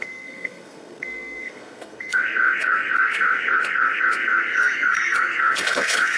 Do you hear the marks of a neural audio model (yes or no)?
yes